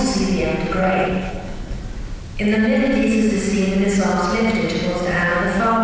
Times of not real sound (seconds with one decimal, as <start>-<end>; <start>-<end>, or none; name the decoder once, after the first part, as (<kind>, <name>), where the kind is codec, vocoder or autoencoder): 0.8-1.8 (codec, HILCodec)